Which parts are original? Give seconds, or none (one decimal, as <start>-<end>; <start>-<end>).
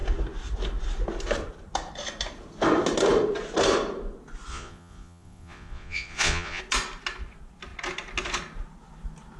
0.0-4.5; 6.6-9.4